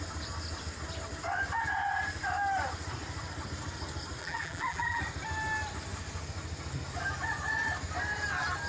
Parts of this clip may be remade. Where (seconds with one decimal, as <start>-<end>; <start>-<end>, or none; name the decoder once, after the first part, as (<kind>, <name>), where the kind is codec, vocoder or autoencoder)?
4.2-5.0 (vocoder, BigVGAN v2)